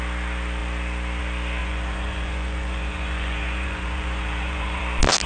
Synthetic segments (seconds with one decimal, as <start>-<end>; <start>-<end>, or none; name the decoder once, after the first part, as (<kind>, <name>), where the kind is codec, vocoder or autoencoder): 1.6-4.8 (vocoder, Vocos)